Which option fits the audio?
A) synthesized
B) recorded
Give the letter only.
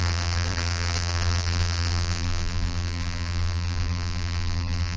A